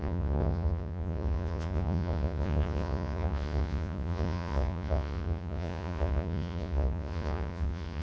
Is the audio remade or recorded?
remade